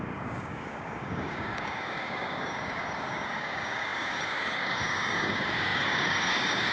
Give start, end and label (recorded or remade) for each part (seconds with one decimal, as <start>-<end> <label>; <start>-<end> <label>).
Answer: 0.0-6.7 remade